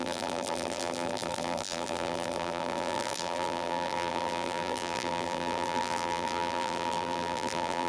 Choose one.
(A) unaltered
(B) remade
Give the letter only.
B